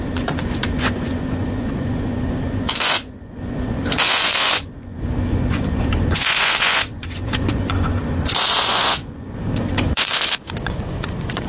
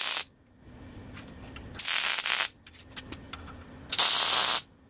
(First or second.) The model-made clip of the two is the first